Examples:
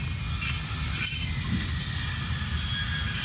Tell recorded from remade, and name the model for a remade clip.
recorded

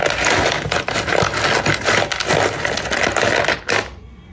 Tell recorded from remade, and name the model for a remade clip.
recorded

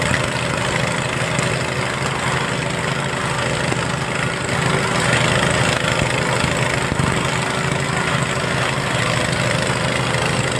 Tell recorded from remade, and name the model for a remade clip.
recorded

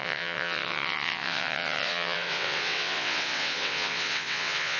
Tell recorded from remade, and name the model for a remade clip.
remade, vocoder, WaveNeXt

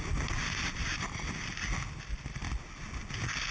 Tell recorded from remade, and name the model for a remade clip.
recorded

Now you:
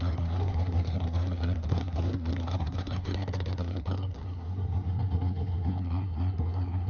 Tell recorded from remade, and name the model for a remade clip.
remade, codec, SNAC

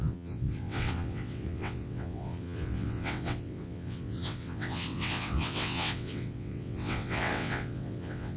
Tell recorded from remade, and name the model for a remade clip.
remade, vocoder, WaveNeXt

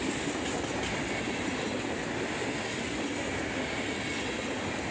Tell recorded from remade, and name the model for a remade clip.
recorded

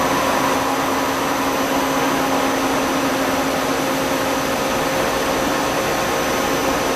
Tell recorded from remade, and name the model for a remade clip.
recorded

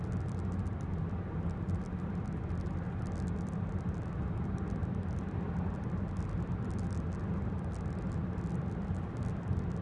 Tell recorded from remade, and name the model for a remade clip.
recorded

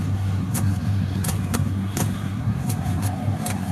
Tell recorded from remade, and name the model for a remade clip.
remade, codec, SNAC